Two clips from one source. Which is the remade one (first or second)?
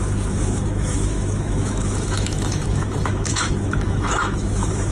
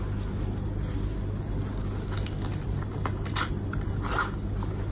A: first